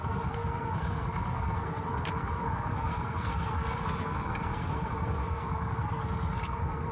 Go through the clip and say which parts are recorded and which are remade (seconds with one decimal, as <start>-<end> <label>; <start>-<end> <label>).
0.0-6.9 remade